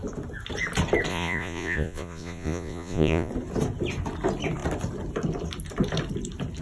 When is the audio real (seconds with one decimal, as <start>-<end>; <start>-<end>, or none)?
0.0-1.1; 3.3-6.6